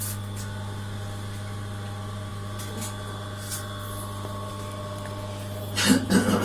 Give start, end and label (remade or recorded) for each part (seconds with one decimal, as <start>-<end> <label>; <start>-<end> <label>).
0.0-6.4 recorded